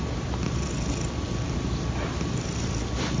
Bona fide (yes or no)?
yes